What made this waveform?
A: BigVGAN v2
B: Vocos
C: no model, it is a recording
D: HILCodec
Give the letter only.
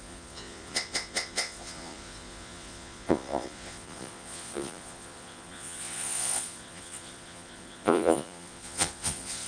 B